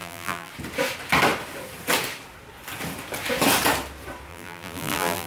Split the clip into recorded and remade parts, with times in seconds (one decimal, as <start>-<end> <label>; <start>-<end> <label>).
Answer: 0.0-0.5 remade; 0.5-4.3 recorded; 4.3-5.3 remade